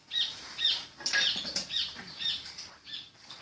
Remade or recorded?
recorded